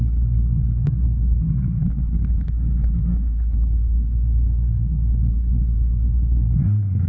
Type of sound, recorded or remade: remade